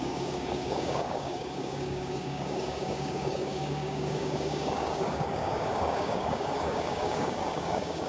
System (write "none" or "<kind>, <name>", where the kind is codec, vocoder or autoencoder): codec, DAC